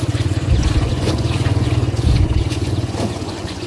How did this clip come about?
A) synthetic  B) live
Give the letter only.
A